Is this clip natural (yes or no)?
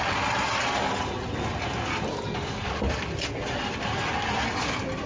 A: yes